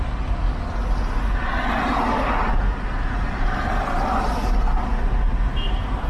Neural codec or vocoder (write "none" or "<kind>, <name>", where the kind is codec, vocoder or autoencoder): none